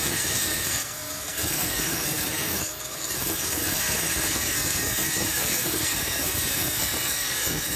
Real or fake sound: fake